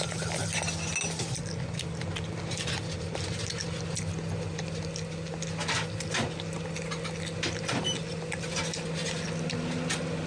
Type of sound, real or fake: real